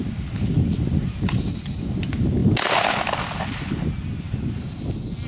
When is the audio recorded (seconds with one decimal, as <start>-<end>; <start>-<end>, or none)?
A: 0.0-5.3